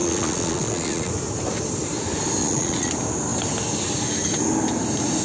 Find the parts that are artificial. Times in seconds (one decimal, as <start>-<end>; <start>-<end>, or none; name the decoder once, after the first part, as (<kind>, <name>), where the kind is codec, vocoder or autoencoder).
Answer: 0.0-1.1 (vocoder, Vocos); 2.4-2.9